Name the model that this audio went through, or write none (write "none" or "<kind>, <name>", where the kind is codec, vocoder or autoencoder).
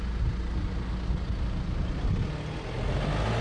none